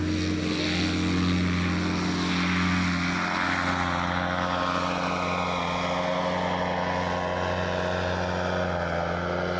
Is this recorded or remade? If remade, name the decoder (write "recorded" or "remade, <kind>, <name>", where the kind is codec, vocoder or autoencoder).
recorded